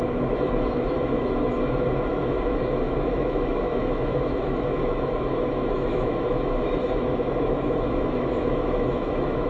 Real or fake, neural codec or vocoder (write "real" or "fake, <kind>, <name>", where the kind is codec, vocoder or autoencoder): fake, autoencoder, DAC-VAE